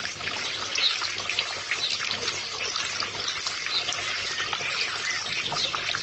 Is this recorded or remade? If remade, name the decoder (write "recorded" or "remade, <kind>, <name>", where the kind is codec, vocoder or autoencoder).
recorded